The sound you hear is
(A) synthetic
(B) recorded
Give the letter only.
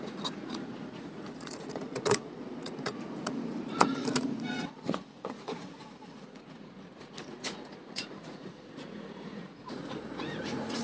A